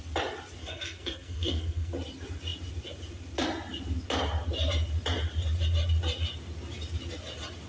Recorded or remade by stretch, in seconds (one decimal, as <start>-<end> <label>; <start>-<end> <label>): 0.0-0.6 recorded; 0.6-1.9 remade; 1.9-7.7 recorded